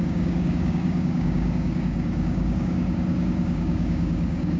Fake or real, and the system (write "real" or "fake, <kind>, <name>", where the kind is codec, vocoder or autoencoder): fake, codec, DAC